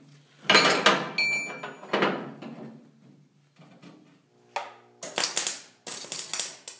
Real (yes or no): yes